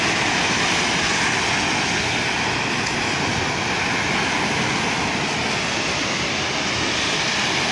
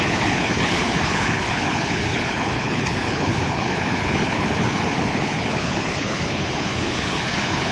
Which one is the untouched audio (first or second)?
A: first